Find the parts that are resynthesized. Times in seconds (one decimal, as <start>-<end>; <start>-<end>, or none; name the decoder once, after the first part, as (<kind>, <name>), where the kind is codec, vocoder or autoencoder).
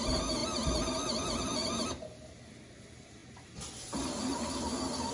none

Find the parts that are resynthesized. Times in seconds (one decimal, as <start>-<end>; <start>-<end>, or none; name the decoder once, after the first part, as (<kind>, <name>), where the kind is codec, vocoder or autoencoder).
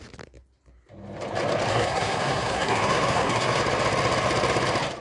1.7-3.6 (codec, SNAC)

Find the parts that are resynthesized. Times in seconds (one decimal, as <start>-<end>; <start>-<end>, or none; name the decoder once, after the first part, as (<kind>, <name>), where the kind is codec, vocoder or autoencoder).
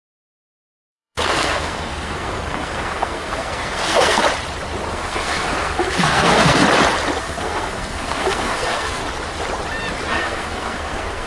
0.0-4.2 (codec, SNAC); 4.9-6.6; 7.2-9.0; 10.1-11.3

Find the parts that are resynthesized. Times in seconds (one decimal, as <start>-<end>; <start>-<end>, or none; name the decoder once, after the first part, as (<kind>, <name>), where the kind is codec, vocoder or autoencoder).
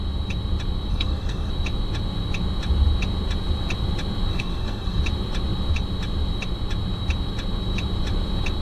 0.9-1.5 (codec, SNAC); 4.3-5.0